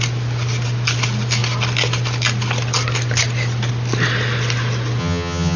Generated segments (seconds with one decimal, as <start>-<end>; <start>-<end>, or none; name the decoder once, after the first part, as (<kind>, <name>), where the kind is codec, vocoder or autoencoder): 5.0-5.6 (vocoder, HiFi-GAN)